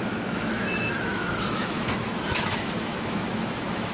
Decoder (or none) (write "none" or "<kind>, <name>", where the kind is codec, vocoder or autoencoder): autoencoder, DAC-VAE